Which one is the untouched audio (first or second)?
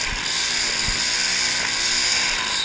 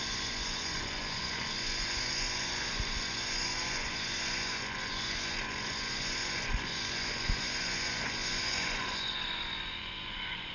first